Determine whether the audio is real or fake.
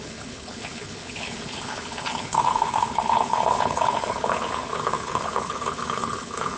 fake